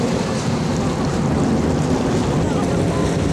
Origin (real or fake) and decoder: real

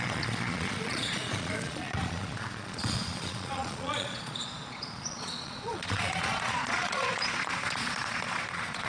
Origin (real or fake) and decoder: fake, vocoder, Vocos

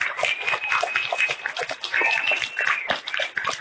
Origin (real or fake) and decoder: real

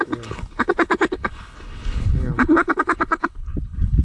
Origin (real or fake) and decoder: fake, codec, HILCodec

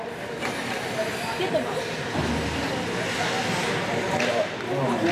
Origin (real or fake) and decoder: real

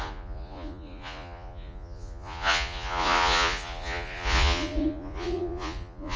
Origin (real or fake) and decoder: fake, vocoder, Vocos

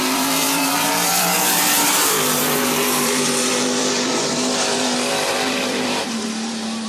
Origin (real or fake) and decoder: fake, vocoder, BigVGAN v2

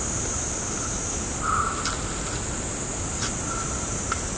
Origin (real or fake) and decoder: real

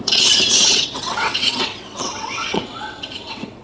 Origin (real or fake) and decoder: fake, vocoder, WaveNeXt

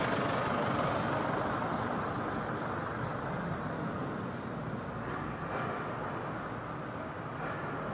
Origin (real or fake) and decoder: real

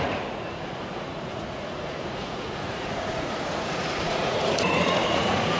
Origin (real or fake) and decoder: fake, vocoder, Vocos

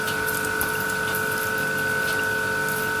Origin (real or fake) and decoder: real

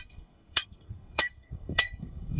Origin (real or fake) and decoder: fake, codec, SNAC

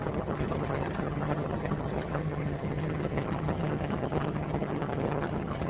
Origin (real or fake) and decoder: fake, vocoder, HiFi-GAN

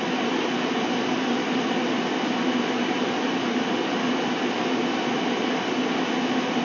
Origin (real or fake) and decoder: real